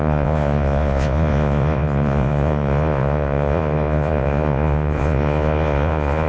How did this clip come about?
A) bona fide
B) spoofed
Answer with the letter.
B